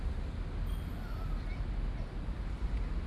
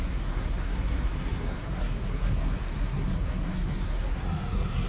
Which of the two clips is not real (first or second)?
second